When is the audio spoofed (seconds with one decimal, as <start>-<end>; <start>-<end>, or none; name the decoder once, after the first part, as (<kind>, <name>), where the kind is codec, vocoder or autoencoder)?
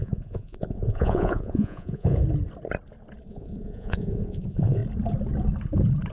0.0-2.2 (vocoder, Vocos); 3.3-4.8